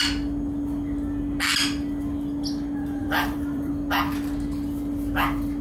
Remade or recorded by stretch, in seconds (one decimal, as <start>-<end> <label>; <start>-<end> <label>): 0.0-3.0 recorded; 3.0-3.7 remade; 3.7-5.6 recorded